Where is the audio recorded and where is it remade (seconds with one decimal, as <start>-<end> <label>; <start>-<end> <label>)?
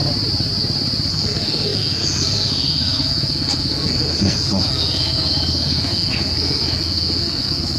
0.0-1.1 recorded; 1.1-7.8 remade